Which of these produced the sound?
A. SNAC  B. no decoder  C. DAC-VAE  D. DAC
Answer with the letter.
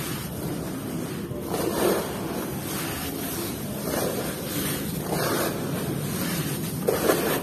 B